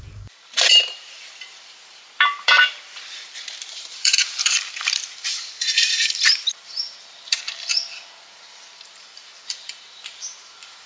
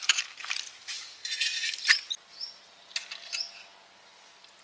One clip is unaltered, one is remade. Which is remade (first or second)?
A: first